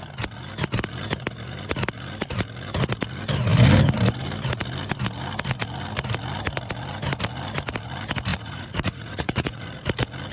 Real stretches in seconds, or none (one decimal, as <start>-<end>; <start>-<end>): 0.0-8.3; 9.8-10.3